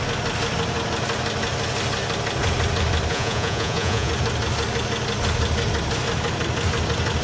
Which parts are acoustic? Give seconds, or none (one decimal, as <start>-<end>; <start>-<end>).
0.0-3.1; 4.1-7.2